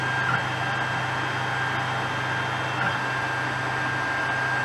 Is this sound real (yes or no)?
yes